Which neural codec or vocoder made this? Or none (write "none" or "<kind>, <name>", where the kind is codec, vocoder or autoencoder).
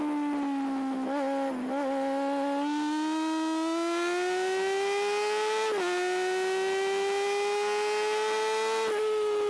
none